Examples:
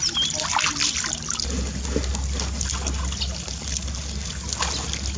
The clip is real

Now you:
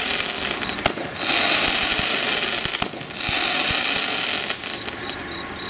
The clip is real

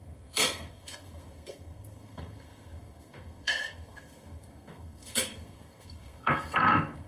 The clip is fake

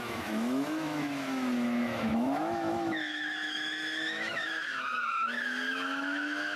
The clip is fake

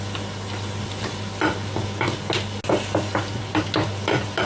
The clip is real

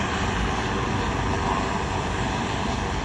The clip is real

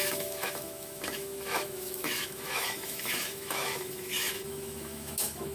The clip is fake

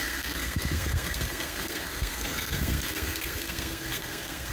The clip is fake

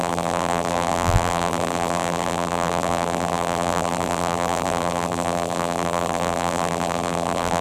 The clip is fake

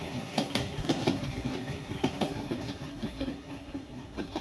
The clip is fake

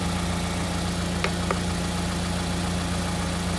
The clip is real